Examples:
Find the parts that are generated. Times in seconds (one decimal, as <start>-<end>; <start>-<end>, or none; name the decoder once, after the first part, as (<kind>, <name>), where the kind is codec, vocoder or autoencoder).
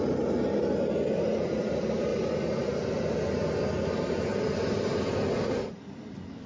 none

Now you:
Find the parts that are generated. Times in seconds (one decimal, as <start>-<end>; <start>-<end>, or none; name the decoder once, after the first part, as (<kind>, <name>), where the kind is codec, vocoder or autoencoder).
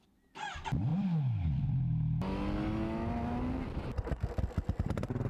none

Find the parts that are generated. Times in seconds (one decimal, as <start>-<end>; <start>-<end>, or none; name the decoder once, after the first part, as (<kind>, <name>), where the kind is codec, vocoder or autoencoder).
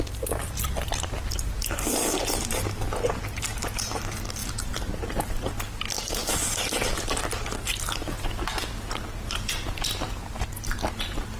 none